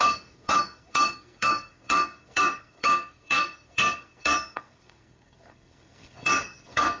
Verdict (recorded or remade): remade